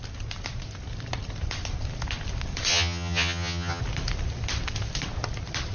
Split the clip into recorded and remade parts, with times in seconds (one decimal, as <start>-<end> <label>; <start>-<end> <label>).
0.0-2.7 recorded; 2.7-3.8 remade; 3.8-5.7 recorded